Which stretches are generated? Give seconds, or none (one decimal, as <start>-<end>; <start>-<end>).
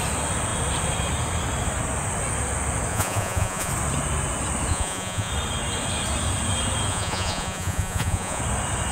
2.9-3.7; 4.7-5.3; 6.9-8.4